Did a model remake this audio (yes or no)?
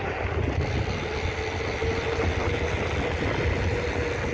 no